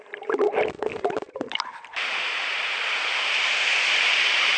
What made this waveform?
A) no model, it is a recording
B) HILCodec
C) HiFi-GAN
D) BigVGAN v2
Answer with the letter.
D